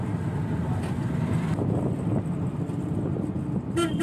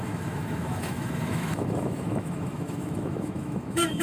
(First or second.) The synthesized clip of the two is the second